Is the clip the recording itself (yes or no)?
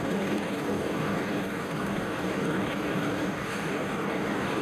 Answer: no